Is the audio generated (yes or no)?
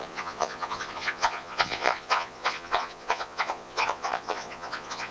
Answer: yes